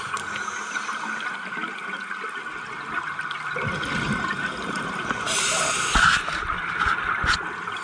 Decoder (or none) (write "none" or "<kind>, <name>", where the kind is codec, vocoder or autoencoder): none